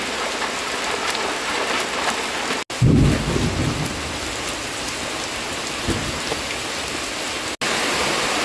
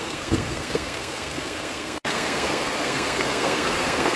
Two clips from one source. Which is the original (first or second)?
first